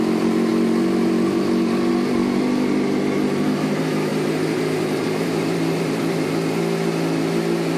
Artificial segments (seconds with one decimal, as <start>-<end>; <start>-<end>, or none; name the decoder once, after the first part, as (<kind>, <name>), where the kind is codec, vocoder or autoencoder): 4.1-6.3 (vocoder, BigVGAN v2)